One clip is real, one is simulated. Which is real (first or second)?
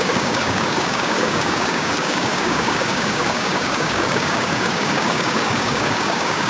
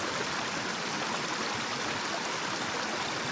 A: second